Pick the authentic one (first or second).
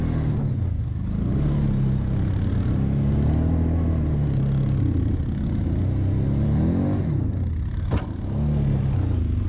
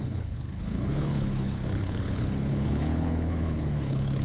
first